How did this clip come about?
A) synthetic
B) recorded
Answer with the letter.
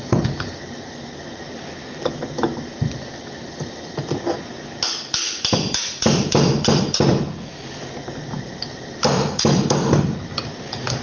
B